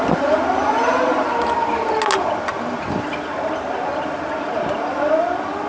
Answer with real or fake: real